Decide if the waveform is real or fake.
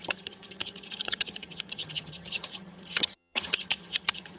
fake